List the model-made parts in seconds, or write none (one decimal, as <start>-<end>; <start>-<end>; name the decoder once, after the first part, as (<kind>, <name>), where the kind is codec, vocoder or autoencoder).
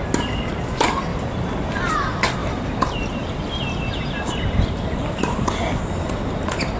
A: 1.1-1.9 (vocoder, BigVGAN v2); 2.4-5.8